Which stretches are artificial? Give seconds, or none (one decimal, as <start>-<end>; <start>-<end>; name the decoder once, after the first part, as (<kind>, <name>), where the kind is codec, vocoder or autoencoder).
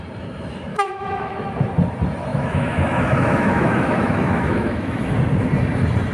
0.7-1.7 (autoencoder, DAC-VAE); 2.3-5.1